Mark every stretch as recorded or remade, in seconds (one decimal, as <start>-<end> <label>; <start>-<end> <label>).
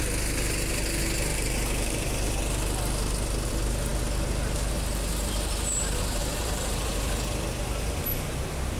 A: 0.0-1.3 recorded; 1.3-2.4 remade; 2.4-6.2 recorded; 6.2-6.9 remade; 6.9-8.8 recorded